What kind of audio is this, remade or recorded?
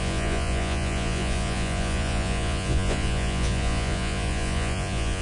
remade